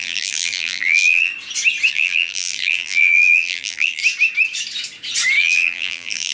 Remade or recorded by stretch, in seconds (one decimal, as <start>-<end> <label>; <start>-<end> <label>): 0.0-1.3 remade; 1.3-1.9 recorded; 1.9-4.0 remade; 4.0-5.4 recorded; 5.4-6.3 remade